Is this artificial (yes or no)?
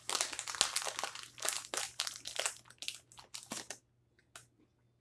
no